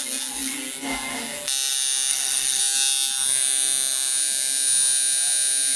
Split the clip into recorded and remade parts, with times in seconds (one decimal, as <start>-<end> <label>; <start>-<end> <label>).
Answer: 0.0-2.1 recorded; 2.1-2.6 remade; 2.6-5.8 recorded